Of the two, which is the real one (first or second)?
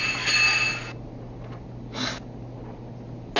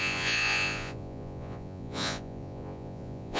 first